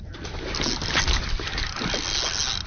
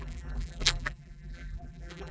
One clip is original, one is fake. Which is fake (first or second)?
second